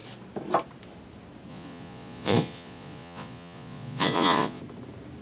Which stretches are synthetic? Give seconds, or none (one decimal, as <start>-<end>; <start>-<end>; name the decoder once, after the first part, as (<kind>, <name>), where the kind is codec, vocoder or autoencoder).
1.5-4.6 (vocoder, Vocos)